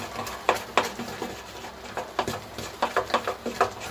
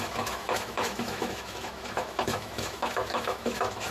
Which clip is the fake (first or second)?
second